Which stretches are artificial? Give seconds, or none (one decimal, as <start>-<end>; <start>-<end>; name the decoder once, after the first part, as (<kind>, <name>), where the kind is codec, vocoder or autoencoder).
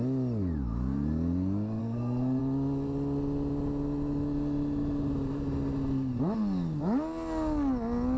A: 1.8-2.4 (codec, SNAC)